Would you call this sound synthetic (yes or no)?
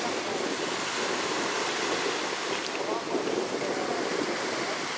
no